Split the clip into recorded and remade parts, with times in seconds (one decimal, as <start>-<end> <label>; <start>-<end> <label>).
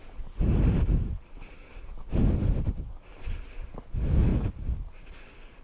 0.0-5.6 recorded